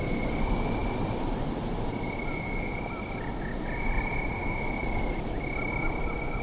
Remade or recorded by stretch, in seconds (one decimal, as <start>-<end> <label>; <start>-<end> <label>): 0.0-0.8 remade; 0.8-1.4 recorded; 1.4-4.8 remade; 4.8-5.7 recorded; 5.7-6.4 remade